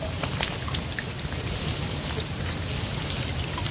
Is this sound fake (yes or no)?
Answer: no